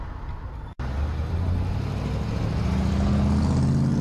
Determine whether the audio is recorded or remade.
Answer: recorded